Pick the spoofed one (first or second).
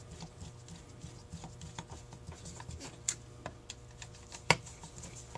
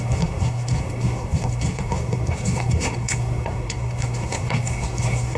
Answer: second